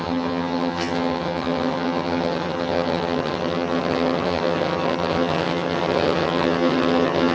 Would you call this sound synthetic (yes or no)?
yes